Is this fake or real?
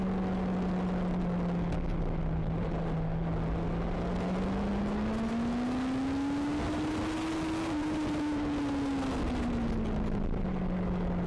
real